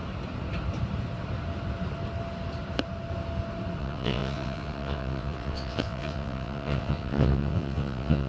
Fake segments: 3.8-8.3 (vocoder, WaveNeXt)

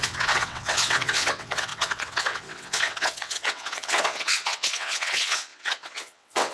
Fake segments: 0.0-6.5 (vocoder, WaveNeXt)

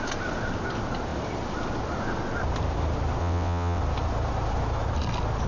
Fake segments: 3.2-3.8 (vocoder, WaveNeXt)

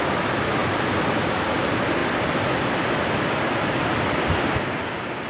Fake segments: none

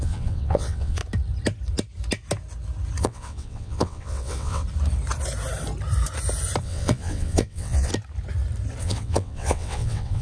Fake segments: 0.0-1.0 (vocoder, WaveNeXt); 3.0-4.6; 6.6-7.9; 8.8-10.2

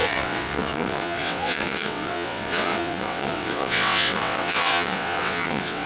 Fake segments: 0.0-5.9 (vocoder, WaveNeXt)

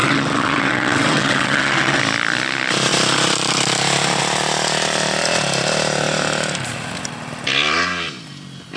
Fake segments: 0.0-2.0 (vocoder, WaveNeXt)